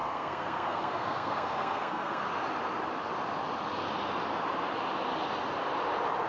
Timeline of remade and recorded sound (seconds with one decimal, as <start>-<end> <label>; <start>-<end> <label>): 0.0-2.2 remade; 2.2-6.3 recorded